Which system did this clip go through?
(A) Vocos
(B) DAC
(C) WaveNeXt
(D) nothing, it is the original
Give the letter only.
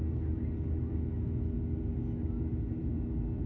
D